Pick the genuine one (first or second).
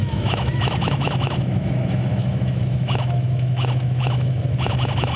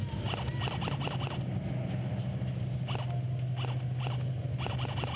second